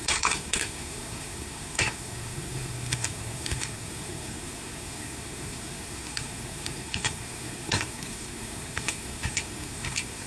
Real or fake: fake